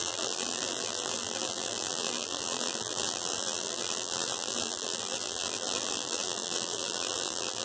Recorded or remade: remade